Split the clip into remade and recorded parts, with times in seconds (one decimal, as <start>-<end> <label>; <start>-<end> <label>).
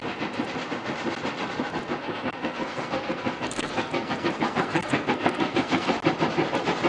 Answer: 0.0-2.0 recorded; 2.0-5.9 remade; 5.9-6.9 recorded